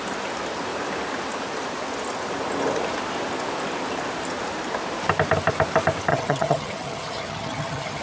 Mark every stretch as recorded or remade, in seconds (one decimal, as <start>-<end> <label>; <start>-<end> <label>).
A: 0.0-6.1 recorded; 6.1-8.0 remade